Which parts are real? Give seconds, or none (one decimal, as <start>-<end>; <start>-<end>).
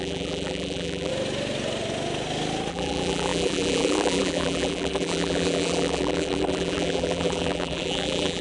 1.1-2.7